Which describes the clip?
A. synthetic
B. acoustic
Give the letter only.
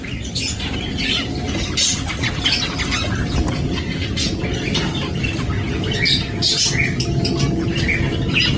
B